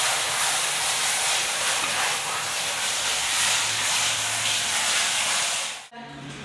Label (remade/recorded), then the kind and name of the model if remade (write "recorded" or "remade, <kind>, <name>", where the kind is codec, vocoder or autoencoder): recorded